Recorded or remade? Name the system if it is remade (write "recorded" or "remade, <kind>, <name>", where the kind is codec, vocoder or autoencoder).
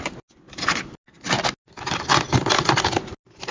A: recorded